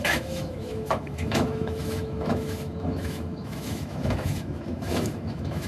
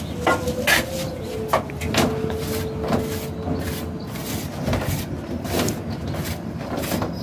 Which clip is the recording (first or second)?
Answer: second